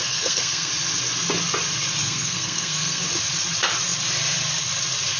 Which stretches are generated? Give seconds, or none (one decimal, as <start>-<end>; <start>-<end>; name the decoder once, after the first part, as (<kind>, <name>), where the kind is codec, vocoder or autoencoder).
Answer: 0.0-0.7 (codec, SNAC); 2.0-3.0